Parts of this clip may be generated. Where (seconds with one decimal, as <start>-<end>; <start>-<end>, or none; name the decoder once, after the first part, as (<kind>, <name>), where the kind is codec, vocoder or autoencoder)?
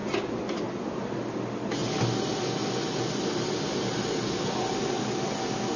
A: none